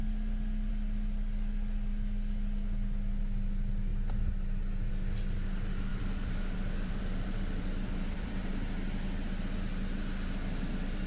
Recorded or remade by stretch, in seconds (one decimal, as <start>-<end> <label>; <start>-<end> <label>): 0.0-5.9 recorded; 5.9-8.5 remade; 8.5-11.1 recorded